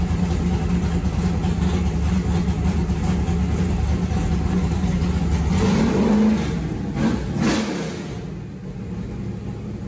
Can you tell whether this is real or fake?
real